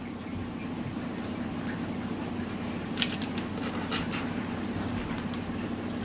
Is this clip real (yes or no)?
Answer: yes